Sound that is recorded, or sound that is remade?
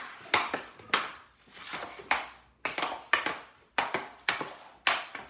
recorded